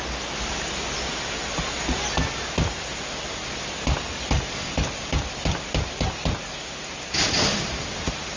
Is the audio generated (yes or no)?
no